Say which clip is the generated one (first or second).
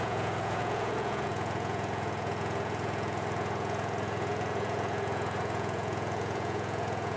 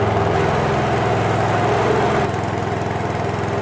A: first